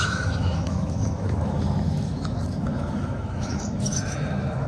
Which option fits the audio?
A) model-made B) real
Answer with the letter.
A